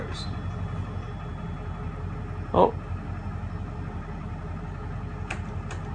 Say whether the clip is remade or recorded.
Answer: recorded